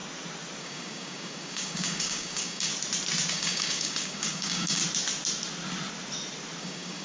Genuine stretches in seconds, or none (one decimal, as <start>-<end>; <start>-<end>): 0.0-0.6; 2.7-3.3; 4.8-6.6

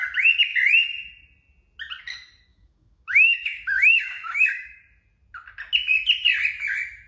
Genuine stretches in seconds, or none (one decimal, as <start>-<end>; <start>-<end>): 0.0-2.5; 4.8-7.1